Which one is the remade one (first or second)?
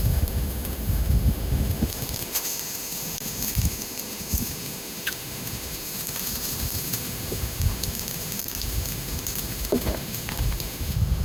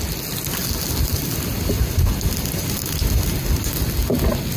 first